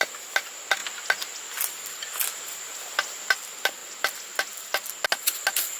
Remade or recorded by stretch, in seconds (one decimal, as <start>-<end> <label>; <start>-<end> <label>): 0.0-5.8 recorded